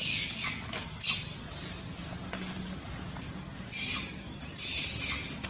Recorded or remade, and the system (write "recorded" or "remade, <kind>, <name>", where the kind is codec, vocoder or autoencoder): recorded